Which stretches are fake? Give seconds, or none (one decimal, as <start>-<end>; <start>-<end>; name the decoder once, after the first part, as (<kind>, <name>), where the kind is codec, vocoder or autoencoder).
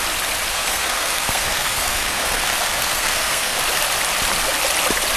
0.5-3.6 (codec, SNAC)